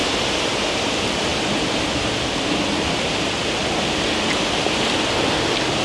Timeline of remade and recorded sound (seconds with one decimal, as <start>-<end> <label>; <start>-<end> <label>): 0.0-0.8 remade; 0.8-5.8 recorded